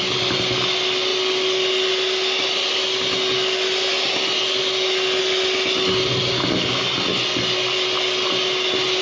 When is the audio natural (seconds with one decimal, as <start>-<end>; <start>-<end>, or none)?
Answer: 0.0-9.0